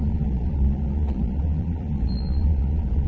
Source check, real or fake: fake